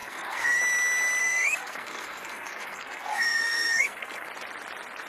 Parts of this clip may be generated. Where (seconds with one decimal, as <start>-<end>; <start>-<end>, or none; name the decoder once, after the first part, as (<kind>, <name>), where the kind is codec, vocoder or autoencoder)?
0.0-0.6 (codec, SNAC); 1.2-4.3